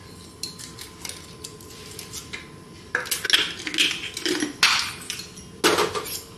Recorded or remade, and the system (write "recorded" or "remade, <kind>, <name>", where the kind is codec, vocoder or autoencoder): recorded